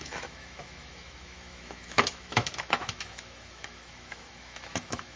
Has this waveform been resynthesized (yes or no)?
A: yes